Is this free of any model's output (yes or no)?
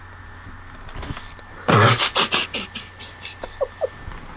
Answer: yes